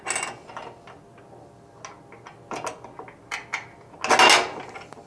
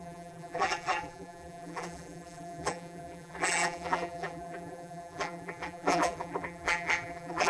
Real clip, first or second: first